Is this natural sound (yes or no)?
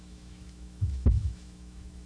no